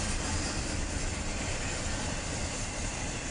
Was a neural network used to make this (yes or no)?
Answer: no